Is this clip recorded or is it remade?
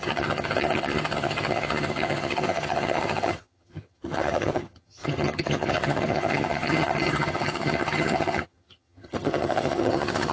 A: remade